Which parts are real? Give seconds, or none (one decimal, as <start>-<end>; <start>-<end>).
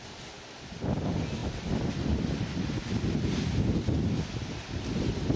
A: 0.0-5.4